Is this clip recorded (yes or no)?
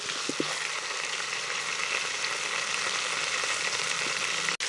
yes